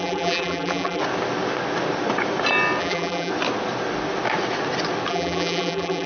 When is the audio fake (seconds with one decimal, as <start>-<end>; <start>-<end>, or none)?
0.0-1.0; 2.8-3.3; 5.1-6.1